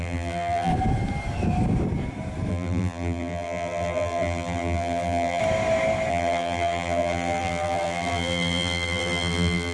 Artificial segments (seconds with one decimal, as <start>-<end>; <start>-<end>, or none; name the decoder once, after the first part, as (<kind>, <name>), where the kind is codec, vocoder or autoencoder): 0.0-0.7 (vocoder, BigVGAN v2); 2.5-5.4; 6.1-9.7